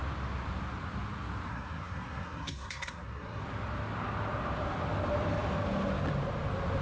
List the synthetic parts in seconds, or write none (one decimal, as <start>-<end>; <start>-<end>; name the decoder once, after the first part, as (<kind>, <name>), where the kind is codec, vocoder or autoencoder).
1.5-3.4 (codec, SNAC)